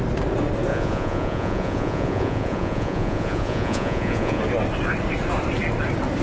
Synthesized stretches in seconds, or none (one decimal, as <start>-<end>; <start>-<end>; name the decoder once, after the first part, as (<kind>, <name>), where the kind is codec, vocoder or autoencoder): 0.7-4.4 (vocoder, Vocos)